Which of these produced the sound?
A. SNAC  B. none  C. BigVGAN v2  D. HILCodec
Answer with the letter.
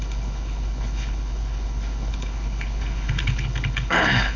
D